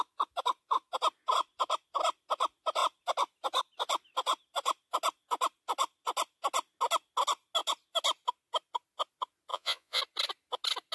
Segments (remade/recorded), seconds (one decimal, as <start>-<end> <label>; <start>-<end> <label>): 0.0-9.5 recorded; 9.5-10.0 remade; 10.0-10.9 recorded